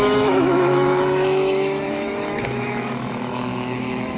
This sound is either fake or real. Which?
fake